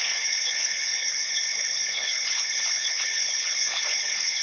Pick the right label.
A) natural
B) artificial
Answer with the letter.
B